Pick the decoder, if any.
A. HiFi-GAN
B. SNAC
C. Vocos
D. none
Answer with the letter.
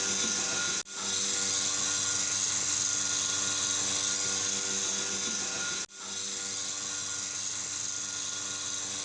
D